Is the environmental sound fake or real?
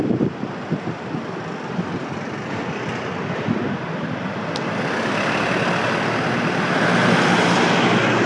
real